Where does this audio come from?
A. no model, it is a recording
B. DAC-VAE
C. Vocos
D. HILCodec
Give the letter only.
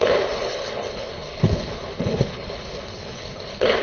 D